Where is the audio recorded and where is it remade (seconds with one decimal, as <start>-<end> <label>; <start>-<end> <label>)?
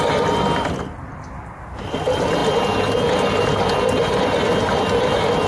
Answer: 0.0-5.5 recorded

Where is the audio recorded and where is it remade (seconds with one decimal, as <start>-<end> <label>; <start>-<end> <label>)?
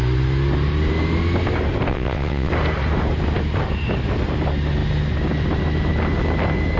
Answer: 0.0-1.9 recorded; 1.9-2.5 remade; 2.5-6.8 recorded